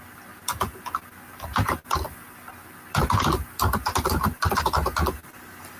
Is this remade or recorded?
recorded